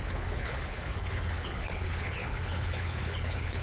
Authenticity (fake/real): fake